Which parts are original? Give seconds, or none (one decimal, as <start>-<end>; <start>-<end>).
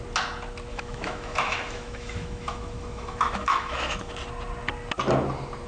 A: 0.0-0.7; 4.1-5.7